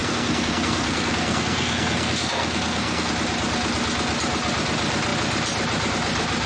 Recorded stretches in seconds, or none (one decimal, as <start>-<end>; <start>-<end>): 3.1-6.5